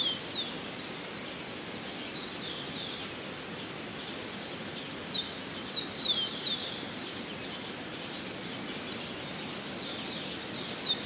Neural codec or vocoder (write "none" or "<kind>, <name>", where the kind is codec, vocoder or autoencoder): none